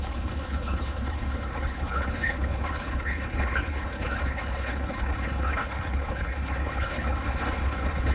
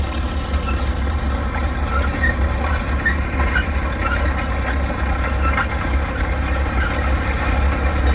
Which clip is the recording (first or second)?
second